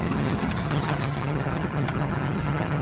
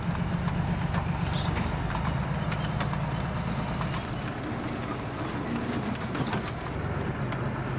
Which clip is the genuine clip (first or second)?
second